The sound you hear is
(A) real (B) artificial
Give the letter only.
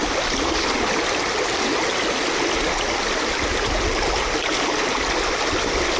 A